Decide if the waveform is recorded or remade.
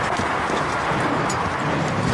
recorded